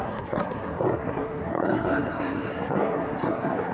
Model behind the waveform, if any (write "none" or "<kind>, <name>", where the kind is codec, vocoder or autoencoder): codec, SNAC